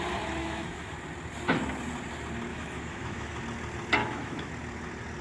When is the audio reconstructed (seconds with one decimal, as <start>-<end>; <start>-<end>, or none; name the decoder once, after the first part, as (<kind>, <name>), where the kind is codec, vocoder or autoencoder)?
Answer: 0.4-0.9 (autoencoder, DAC-VAE); 2.5-3.4; 4.0-4.5